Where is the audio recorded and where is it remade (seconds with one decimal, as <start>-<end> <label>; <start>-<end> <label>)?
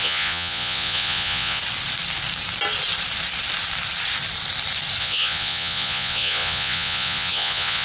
0.0-1.6 remade; 1.6-5.0 recorded; 5.0-7.8 remade